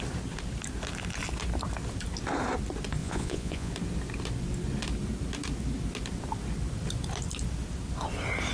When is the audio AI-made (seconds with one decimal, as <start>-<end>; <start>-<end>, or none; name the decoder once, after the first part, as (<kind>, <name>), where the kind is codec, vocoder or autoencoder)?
3.0-3.7 (vocoder, Vocos)